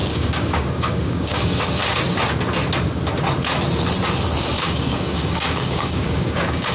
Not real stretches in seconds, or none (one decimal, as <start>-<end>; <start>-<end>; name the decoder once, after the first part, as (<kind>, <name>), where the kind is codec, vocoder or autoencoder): 0.0-1.8 (codec, DAC); 4.4-6.7